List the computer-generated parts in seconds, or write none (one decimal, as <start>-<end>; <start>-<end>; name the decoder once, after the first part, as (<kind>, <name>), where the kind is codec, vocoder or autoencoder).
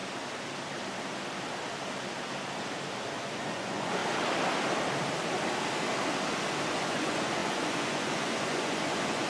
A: 3.2-4.0 (vocoder, Vocos); 6.7-9.3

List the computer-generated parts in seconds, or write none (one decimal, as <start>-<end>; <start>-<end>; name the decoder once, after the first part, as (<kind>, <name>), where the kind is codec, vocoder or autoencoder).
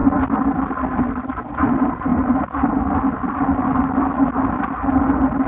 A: none